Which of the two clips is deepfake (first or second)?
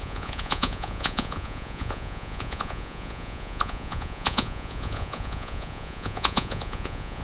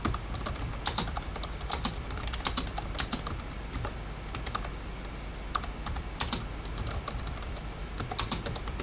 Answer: first